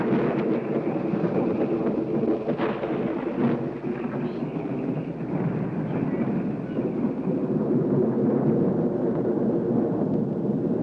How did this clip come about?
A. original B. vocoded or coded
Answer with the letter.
A